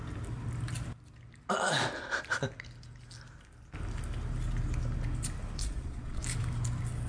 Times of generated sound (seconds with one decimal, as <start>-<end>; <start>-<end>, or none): 5.6-6.2